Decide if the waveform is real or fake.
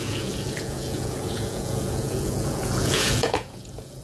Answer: fake